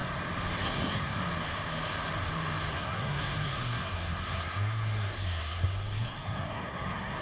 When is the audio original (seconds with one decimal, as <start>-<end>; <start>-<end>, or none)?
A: 0.0-0.6; 1.2-2.7